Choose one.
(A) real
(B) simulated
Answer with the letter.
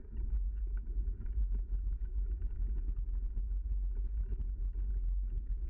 A